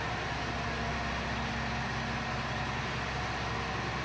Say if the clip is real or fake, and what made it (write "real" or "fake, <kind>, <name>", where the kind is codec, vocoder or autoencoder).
real